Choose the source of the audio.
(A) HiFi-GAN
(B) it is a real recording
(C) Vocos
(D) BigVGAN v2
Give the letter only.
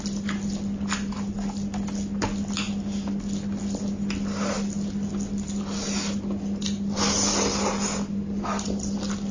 B